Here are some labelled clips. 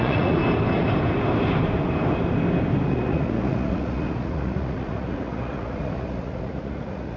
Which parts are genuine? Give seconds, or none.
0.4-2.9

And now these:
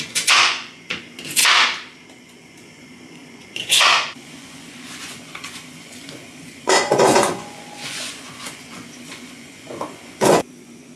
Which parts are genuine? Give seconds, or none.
1.4-2.2

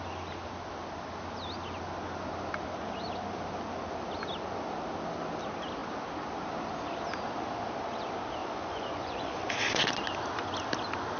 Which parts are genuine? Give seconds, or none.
0.0-8.4; 9.5-11.2

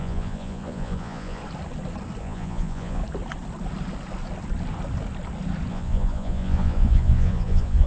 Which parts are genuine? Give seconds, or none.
1.4-2.2; 3.0-5.7

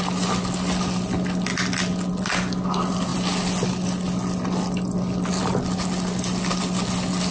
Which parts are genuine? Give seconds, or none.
0.0-7.3

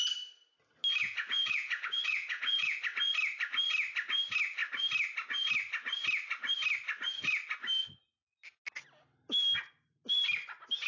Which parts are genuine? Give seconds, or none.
0.0-1.0; 2.8-10.9

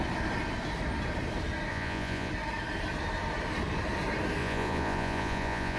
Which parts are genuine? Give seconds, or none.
0.0-1.7; 2.3-4.4

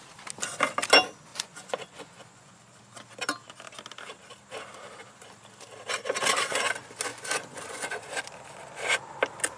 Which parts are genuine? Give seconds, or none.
0.0-1.3; 2.8-7.1; 8.2-9.6